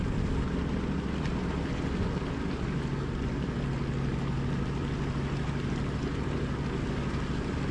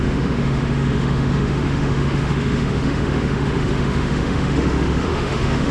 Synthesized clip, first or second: second